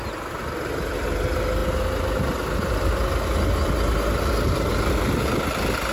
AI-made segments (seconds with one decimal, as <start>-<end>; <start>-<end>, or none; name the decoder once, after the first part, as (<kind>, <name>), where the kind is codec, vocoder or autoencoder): none